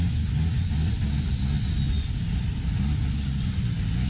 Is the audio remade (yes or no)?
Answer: no